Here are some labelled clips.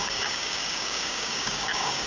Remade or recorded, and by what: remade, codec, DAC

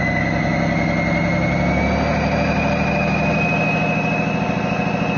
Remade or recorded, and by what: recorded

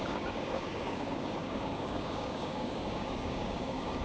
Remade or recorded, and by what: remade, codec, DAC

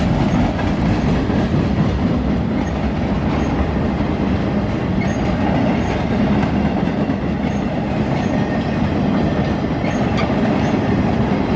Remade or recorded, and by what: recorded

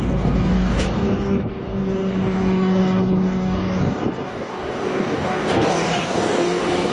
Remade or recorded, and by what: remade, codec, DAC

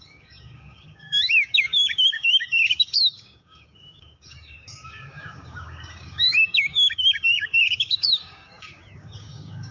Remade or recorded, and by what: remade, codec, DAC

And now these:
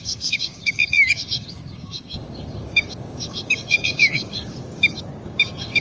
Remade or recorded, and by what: remade, codec, DAC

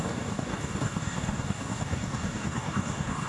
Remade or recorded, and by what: remade, codec, DAC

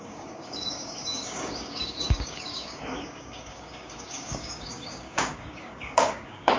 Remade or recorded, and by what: remade, codec, DAC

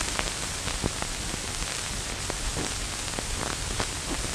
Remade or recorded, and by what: recorded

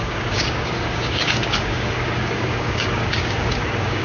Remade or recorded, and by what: remade, codec, DAC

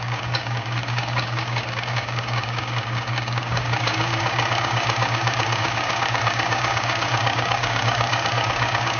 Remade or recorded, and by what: remade, codec, DAC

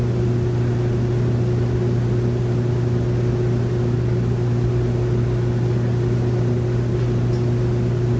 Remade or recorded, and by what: recorded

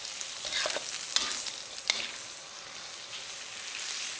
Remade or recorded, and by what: recorded